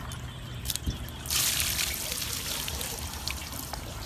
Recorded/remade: recorded